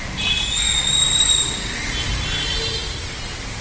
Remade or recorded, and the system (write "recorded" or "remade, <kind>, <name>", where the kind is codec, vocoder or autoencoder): recorded